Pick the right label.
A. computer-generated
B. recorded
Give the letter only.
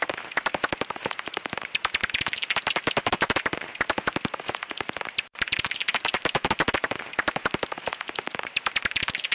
A